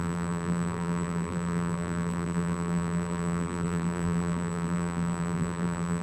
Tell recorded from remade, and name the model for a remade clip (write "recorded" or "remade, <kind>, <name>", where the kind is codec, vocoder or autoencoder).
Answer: remade, vocoder, BigVGAN v2